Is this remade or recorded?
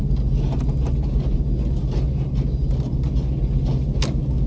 recorded